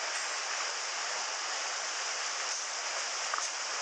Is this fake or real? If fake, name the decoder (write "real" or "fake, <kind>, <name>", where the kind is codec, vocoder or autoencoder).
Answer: real